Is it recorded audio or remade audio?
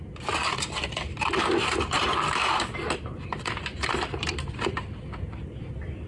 remade